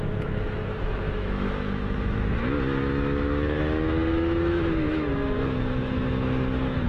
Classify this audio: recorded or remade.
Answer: remade